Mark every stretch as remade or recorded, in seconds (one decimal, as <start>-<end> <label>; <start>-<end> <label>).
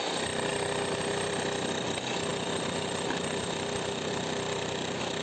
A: 0.0-5.2 recorded